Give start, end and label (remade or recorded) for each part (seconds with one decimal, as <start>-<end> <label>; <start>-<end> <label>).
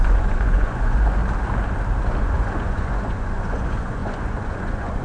0.0-1.2 remade; 1.2-2.2 recorded; 2.2-5.0 remade